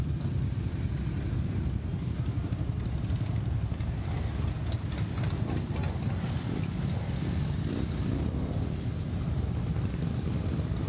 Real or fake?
real